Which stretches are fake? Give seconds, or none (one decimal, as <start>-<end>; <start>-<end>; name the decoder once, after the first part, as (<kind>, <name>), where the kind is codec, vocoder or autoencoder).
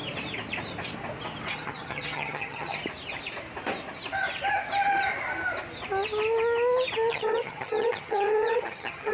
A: 1.5-2.8 (vocoder, HiFi-GAN); 7.1-9.1